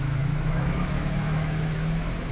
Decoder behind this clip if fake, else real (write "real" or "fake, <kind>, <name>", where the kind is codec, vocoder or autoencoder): fake, autoencoder, DAC-VAE